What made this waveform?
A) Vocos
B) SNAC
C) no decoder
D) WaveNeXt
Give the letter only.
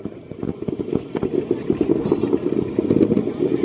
C